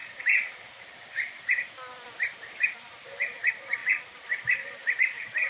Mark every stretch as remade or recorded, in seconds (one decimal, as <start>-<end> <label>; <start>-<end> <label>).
0.0-0.8 remade; 0.8-2.3 recorded; 2.3-3.0 remade; 3.0-5.5 recorded